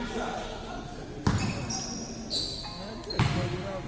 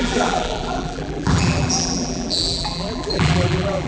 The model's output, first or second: second